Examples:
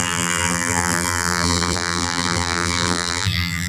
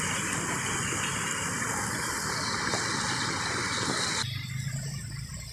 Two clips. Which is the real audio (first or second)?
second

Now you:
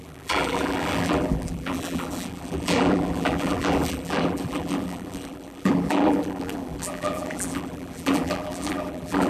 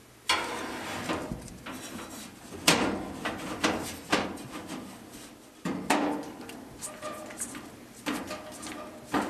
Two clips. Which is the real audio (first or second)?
second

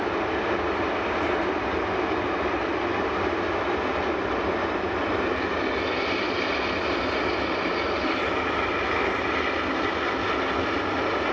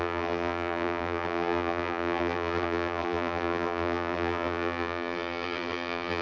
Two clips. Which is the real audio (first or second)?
first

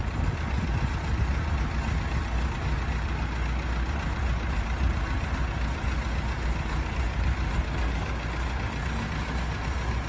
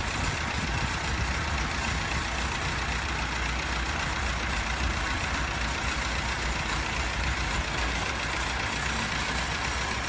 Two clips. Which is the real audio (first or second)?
first